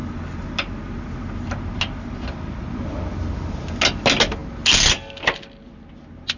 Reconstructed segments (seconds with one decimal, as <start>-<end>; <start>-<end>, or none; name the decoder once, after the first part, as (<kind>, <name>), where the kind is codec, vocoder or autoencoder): none